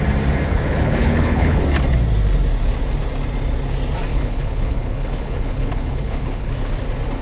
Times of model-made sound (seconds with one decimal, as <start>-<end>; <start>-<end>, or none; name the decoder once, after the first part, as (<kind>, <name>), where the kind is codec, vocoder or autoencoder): 0.5-1.6 (codec, HILCodec); 4.1-6.7